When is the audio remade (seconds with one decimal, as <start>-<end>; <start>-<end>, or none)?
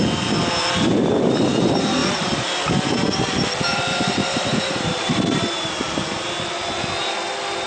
4.2-5.7